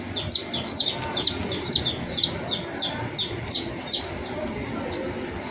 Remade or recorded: recorded